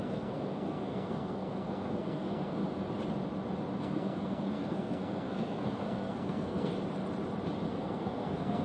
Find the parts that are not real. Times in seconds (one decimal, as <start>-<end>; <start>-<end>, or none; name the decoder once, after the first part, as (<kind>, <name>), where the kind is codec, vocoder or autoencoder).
0.0-2.6 (codec, SNAC); 3.8-6.7; 7.7-8.6